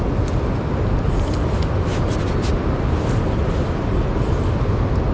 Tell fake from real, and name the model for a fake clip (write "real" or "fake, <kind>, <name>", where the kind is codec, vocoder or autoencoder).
real